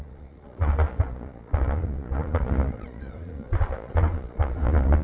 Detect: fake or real fake